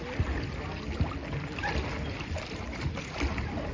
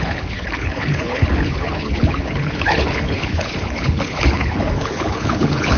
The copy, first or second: second